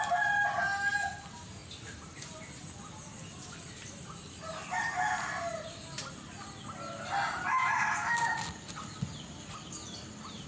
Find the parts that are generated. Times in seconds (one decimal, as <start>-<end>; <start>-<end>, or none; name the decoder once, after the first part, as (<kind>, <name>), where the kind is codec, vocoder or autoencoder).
none